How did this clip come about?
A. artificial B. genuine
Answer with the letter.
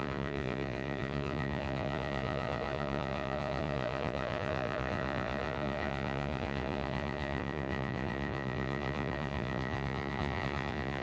A